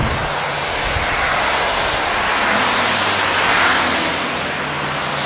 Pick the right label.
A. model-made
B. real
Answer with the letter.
B